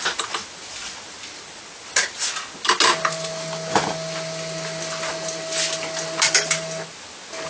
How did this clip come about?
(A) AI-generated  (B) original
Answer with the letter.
B